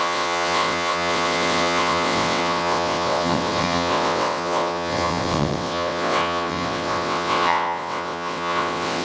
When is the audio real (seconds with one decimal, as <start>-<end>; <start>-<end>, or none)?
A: none